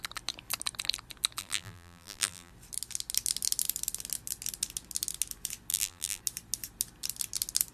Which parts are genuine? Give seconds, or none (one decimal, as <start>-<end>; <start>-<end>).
0.0-1.4; 2.5-5.7; 6.2-7.7